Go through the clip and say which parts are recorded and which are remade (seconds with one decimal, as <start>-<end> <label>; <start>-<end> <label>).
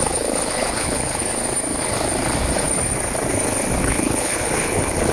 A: 0.0-1.3 remade; 1.3-3.8 recorded; 3.8-5.1 remade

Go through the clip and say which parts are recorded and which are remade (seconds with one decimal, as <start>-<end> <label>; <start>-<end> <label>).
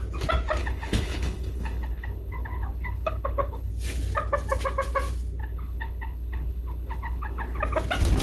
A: 0.0-0.6 recorded; 0.6-3.7 remade; 3.7-5.4 recorded; 5.4-7.6 remade; 7.6-8.2 recorded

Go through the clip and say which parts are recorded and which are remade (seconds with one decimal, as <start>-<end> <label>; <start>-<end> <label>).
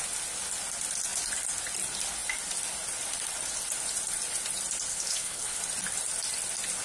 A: 0.0-4.9 recorded; 4.9-5.6 remade; 5.6-6.8 recorded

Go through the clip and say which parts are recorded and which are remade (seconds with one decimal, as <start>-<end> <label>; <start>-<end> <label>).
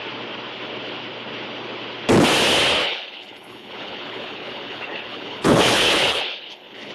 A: 0.0-2.8 recorded; 2.8-6.9 remade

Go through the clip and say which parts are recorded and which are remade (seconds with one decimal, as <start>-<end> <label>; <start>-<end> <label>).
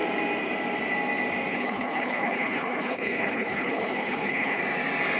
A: 0.0-1.5 recorded; 1.5-4.6 remade; 4.6-5.2 recorded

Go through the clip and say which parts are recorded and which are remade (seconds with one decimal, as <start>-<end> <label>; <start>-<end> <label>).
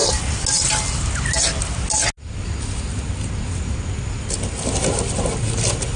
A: 0.0-6.0 recorded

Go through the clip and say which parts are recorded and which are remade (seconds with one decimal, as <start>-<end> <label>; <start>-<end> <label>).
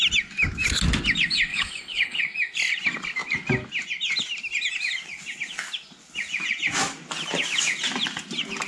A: 0.0-1.5 recorded; 1.5-2.2 remade; 2.2-8.7 recorded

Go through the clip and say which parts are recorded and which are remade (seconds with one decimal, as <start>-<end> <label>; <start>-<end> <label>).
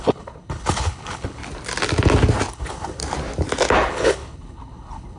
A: 0.0-1.4 remade; 1.4-2.5 recorded; 2.5-3.0 remade; 3.0-3.9 recorded; 3.9-5.2 remade